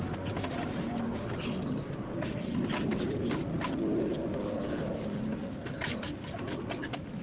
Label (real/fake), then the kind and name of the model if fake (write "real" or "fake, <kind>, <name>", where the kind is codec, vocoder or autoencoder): real